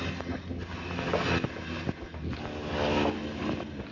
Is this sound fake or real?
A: real